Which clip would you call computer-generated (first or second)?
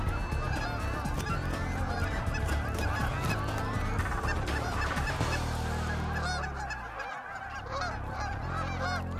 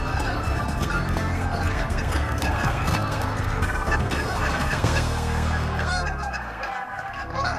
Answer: second